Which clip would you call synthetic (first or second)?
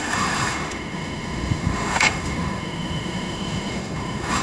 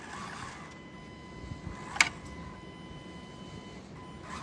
first